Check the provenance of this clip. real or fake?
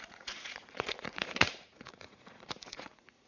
fake